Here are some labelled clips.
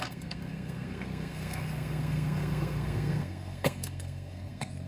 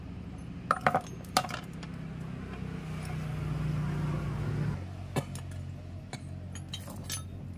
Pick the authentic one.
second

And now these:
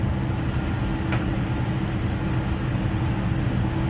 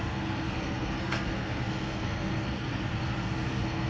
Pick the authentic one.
first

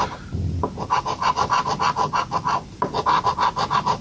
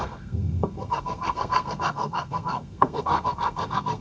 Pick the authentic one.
first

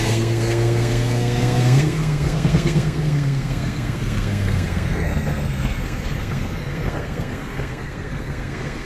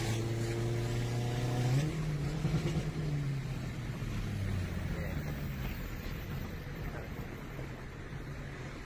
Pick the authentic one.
second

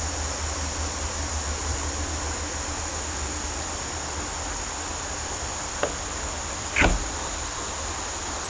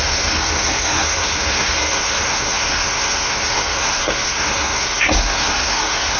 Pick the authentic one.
first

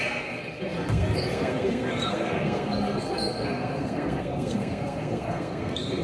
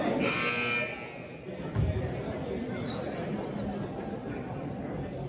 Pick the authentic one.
second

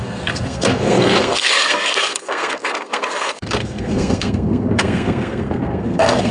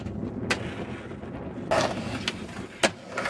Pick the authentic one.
second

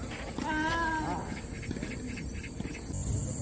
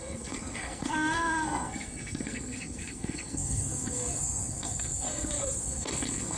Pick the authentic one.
first